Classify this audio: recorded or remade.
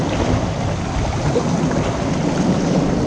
recorded